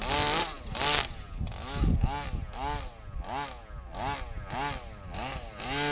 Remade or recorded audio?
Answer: recorded